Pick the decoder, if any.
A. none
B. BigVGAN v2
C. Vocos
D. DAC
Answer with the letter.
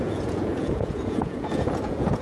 C